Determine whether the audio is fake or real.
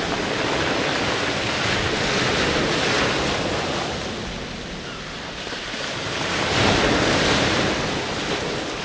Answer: real